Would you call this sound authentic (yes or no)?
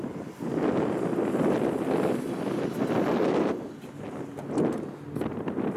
yes